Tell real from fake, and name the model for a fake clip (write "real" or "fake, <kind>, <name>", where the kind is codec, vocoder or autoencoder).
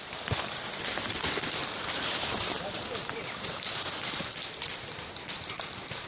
fake, vocoder, BigVGAN v2